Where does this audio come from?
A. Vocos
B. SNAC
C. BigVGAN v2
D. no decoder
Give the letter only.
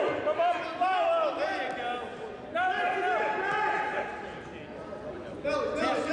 D